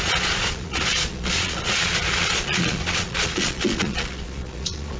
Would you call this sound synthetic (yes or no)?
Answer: yes